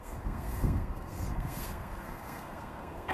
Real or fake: fake